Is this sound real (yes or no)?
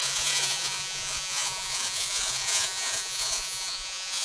no